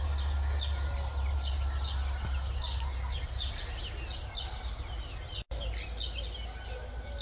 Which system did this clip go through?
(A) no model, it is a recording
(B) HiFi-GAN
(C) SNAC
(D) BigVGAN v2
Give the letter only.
A